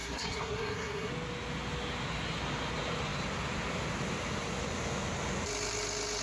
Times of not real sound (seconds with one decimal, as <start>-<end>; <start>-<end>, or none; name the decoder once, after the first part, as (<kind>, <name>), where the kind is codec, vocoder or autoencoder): 0.0-1.1 (codec, SNAC)